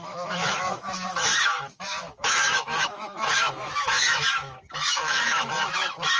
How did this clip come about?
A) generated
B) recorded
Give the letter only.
A